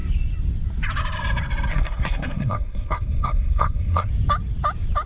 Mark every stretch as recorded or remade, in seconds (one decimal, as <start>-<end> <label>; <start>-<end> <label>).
0.0-1.7 recorded; 1.7-4.1 remade; 4.1-5.1 recorded